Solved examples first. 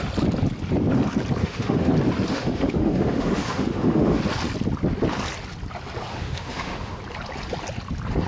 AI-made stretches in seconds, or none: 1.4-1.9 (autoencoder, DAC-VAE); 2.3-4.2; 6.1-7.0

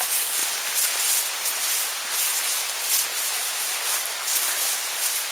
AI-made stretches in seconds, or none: none

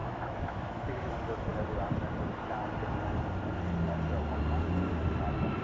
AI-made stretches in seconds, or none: 0.0-1.1 (autoencoder, DAC-VAE)

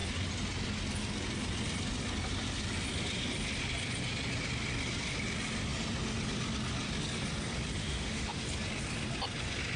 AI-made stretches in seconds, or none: 7.8-8.4 (autoencoder, DAC-VAE)

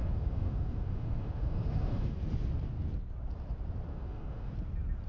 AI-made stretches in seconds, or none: 0.0-2.2 (autoencoder, DAC-VAE); 3.9-4.5

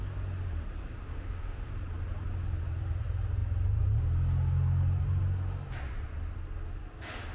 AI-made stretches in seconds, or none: 1.1-1.7 (autoencoder, DAC-VAE)

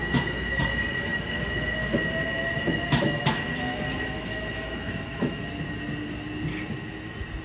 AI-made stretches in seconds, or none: 0.0-0.6 (autoencoder, DAC-VAE); 1.1-5.5